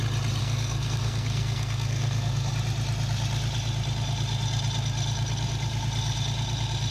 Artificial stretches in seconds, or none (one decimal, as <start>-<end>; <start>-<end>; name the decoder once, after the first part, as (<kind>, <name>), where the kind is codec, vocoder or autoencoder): 0.4-2.5 (codec, SNAC)